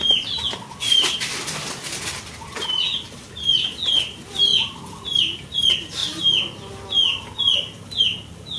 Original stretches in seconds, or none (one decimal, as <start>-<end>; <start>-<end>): 0.0-8.6